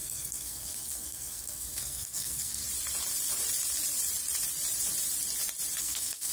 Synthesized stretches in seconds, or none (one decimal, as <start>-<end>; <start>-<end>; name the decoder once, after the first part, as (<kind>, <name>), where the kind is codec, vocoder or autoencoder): 0.0-2.6 (codec, SNAC); 5.8-6.3